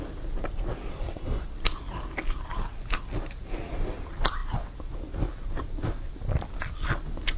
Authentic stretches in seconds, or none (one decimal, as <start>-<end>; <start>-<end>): 0.0-0.9; 1.5-7.4